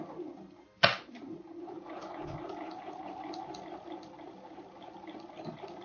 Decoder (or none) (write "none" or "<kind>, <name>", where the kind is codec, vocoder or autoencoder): none